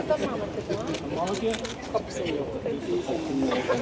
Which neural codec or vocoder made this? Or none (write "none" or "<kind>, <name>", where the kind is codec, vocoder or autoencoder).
none